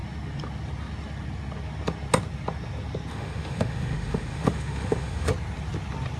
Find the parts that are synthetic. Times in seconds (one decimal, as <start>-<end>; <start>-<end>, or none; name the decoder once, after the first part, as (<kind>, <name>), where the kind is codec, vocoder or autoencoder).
3.1-5.3 (autoencoder, DAC-VAE)